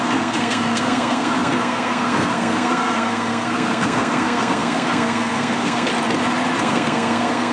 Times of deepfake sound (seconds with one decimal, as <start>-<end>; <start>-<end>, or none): 0.0-5.9; 6.6-7.5

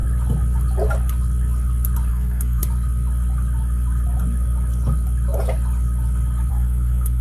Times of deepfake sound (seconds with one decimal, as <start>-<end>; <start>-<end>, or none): 2.1-2.6; 6.5-7.2

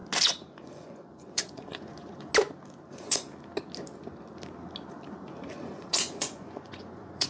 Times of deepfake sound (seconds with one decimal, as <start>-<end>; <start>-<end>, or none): 0.6-2.3; 2.9-3.3; 5.5-7.3

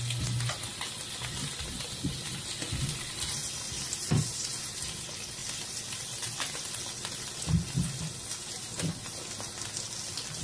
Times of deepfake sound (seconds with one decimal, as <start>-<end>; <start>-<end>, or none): none

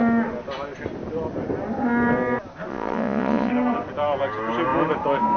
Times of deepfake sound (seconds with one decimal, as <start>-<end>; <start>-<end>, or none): 2.7-3.5

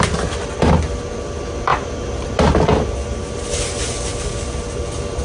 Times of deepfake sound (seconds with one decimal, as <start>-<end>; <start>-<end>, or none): 1.7-2.6